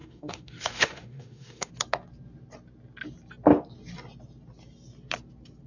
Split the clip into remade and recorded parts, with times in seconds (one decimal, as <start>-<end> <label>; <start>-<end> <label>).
0.0-1.7 remade; 1.7-5.7 recorded